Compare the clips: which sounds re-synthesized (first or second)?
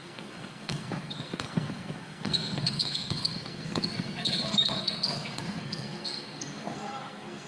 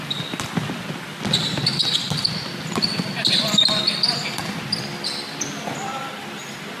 first